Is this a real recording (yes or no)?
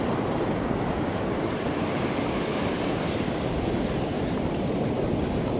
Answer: yes